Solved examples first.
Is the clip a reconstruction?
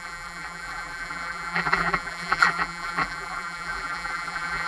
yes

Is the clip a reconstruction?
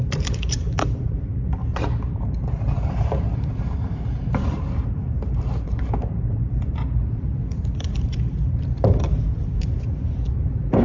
yes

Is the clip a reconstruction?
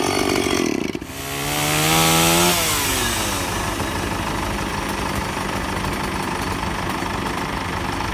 no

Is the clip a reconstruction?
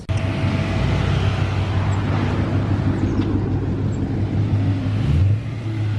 no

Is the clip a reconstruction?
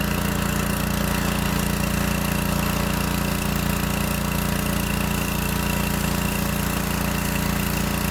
yes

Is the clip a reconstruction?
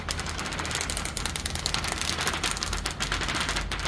no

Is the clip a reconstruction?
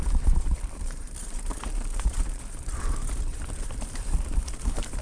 yes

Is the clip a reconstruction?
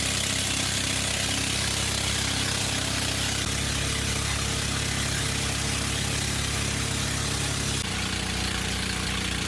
no